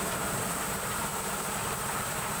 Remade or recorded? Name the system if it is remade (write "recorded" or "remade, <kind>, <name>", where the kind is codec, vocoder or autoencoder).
remade, vocoder, BigVGAN v2